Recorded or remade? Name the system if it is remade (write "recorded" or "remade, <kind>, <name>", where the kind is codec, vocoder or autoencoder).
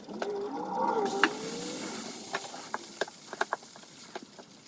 recorded